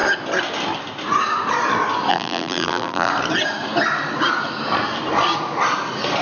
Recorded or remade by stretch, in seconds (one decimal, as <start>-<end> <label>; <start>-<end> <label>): 0.0-2.1 recorded; 2.1-3.1 remade; 3.1-6.2 recorded